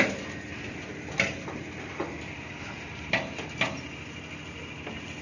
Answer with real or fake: real